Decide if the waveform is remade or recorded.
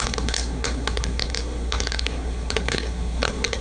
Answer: remade